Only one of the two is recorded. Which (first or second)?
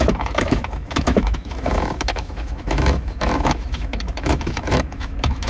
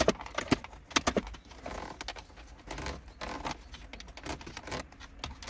second